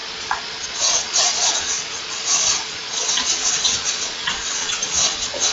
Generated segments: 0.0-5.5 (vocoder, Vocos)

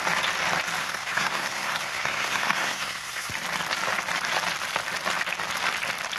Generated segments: 0.8-3.3 (codec, SNAC)

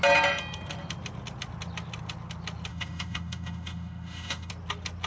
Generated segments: 2.7-4.5 (autoencoder, DAC-VAE)

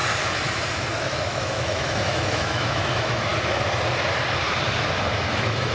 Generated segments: 1.0-3.3 (autoencoder, DAC-VAE); 5.3-5.7

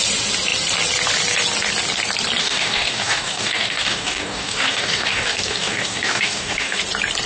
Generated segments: 2.4-6.8 (codec, DAC)

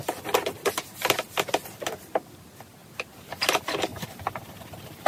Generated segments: 1.6-2.3 (vocoder, BigVGAN v2); 2.8-3.5

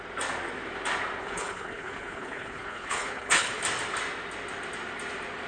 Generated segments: 1.2-3.6 (codec, HILCodec)